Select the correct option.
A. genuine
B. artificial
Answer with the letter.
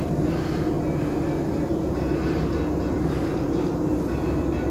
A